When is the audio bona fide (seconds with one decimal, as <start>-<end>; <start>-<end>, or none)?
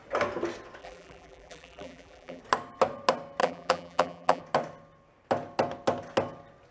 0.0-0.8; 2.4-3.4; 4.4-6.7